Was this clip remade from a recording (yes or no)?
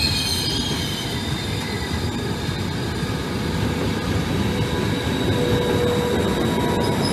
no